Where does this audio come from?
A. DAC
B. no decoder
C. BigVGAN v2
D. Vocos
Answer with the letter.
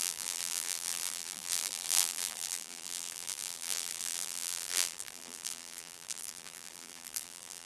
C